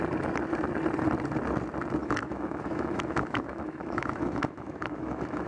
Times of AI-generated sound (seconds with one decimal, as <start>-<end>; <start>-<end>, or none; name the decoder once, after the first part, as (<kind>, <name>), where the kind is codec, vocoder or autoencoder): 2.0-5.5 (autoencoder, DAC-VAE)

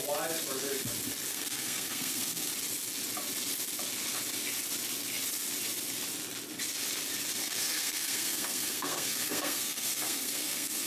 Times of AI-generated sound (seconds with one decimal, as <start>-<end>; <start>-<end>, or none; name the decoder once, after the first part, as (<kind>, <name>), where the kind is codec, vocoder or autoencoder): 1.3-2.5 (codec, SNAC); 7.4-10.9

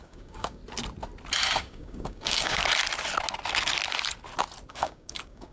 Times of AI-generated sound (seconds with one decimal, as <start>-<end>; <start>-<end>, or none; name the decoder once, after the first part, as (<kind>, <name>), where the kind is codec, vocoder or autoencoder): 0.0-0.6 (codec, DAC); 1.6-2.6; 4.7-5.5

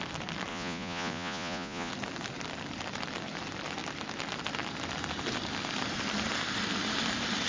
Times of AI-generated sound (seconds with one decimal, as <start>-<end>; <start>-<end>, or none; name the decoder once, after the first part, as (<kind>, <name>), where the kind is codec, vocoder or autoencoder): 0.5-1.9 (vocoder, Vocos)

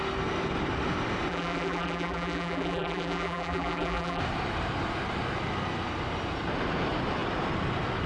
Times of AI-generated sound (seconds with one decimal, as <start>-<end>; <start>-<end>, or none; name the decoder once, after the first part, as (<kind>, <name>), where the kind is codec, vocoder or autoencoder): 1.3-4.2 (vocoder, BigVGAN v2)

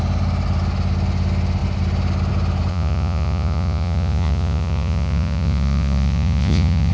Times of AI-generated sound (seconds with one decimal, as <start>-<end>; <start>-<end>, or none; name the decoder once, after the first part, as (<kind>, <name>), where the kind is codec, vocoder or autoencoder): 2.7-6.9 (vocoder, Vocos)

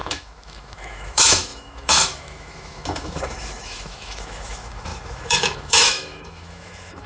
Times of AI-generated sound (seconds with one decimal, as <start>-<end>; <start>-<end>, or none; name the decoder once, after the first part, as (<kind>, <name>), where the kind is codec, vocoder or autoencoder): 0.0-7.1 (autoencoder, DAC-VAE)

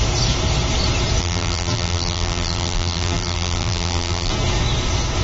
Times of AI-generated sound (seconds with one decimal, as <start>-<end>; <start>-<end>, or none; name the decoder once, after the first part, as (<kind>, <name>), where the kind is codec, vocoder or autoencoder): 1.2-4.3 (vocoder, BigVGAN v2)